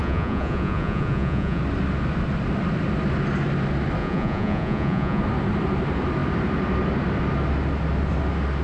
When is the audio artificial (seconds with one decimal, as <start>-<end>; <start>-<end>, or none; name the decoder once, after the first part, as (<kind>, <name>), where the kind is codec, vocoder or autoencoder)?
0.0-1.6 (vocoder, Vocos); 4.0-5.2